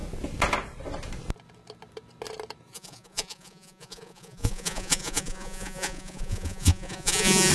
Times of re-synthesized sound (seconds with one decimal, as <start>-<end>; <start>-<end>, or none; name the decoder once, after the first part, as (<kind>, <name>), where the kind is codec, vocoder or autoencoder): 2.7-7.5 (vocoder, Vocos)